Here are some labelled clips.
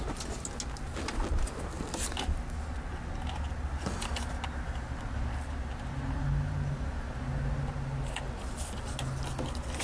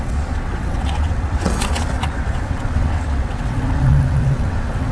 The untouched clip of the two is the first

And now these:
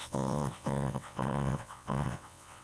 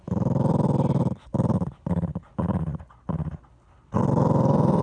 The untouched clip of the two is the second